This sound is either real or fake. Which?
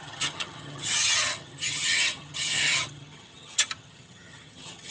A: fake